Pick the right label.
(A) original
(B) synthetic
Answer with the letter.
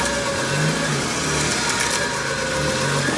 A